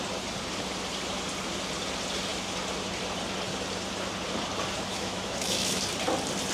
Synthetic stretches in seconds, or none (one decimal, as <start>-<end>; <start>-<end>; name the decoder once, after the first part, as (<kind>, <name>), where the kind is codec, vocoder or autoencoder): 4.9-5.8 (autoencoder, DAC-VAE)